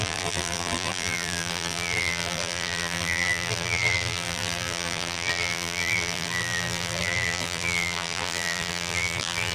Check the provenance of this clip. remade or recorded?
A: remade